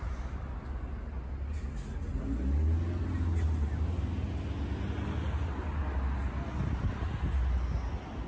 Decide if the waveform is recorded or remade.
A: recorded